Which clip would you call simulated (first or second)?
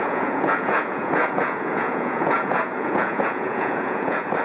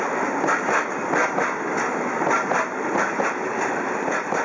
first